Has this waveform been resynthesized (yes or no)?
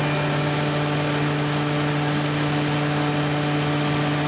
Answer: no